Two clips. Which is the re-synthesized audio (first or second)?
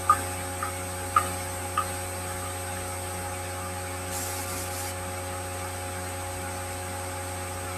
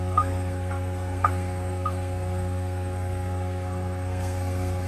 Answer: second